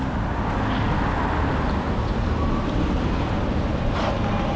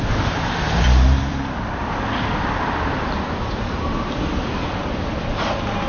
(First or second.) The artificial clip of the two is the second